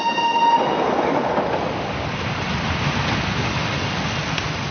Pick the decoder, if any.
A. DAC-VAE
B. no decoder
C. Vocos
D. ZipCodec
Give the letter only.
B